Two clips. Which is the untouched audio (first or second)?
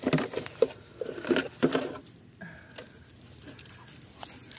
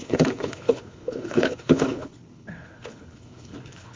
first